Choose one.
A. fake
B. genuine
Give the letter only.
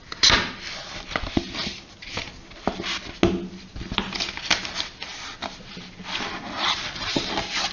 B